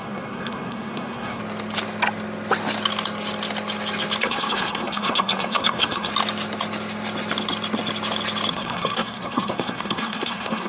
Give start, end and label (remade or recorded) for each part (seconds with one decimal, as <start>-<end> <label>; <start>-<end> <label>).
0.0-1.4 remade; 1.4-4.2 recorded; 4.2-6.1 remade; 6.1-8.5 recorded; 8.5-10.7 remade